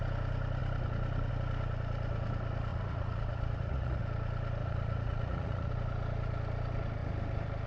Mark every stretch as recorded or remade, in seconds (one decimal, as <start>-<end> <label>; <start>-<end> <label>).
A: 0.0-2.7 recorded; 2.7-4.0 remade; 4.0-4.6 recorded; 4.6-5.7 remade; 5.7-7.7 recorded